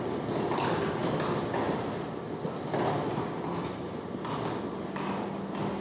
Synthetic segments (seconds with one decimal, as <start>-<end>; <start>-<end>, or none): none